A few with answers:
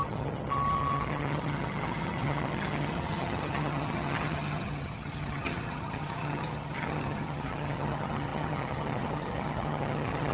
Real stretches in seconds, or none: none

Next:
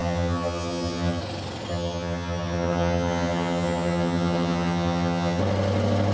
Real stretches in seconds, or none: 1.2-1.7; 5.4-6.1

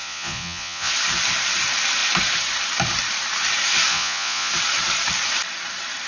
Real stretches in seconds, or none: 0.9-3.9; 4.5-6.1

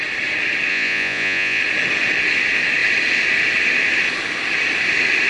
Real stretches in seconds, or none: 0.0-0.7; 1.6-5.3

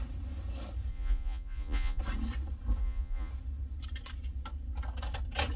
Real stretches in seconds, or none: 0.0-0.9; 2.0-2.8; 3.3-5.6

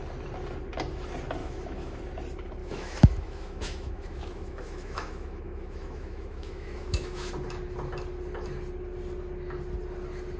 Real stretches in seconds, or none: 0.0-1.4; 2.0-2.6; 7.3-10.4